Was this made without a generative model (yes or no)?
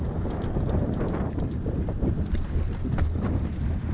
yes